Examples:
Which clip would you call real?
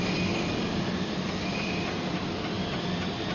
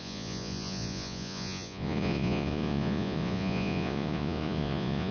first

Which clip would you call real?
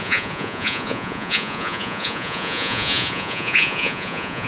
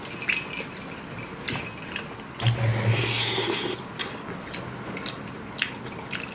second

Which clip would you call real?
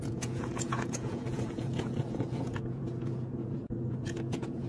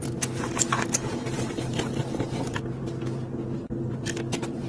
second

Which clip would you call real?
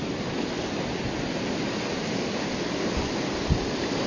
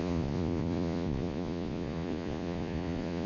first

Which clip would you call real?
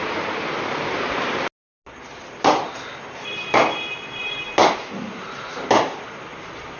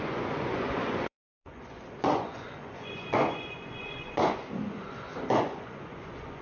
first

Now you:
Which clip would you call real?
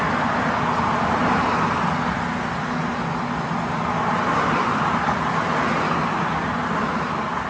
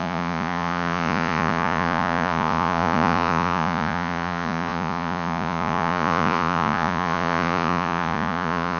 first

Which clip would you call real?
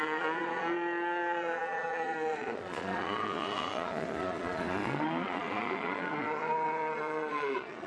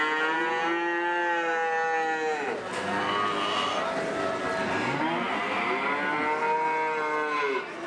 second